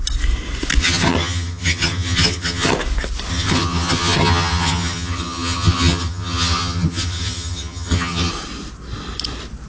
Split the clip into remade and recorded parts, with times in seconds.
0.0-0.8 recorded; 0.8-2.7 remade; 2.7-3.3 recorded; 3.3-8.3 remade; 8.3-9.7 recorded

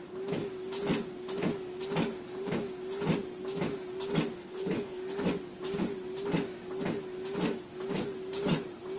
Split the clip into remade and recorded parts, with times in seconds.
0.0-4.4 recorded; 4.4-5.0 remade; 5.0-9.0 recorded

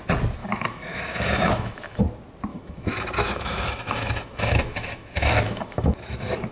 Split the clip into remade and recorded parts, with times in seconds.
0.0-0.4 recorded; 0.4-2.0 remade; 2.0-2.5 recorded; 2.5-6.5 remade

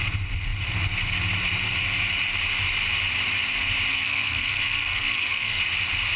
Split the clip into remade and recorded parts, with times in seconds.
0.0-3.9 recorded; 3.9-5.6 remade; 5.6-6.2 recorded

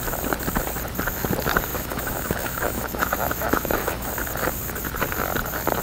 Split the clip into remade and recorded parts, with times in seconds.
0.0-1.7 recorded; 1.7-4.1 remade; 4.1-5.8 recorded

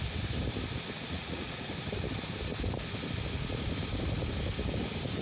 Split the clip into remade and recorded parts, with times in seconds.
0.0-1.0 recorded; 1.0-1.7 remade; 1.7-5.2 recorded